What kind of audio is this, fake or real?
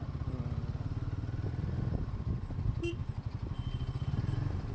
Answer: real